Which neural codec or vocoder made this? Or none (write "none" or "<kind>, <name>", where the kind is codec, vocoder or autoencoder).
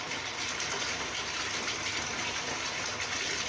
none